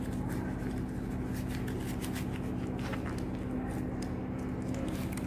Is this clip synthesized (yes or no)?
no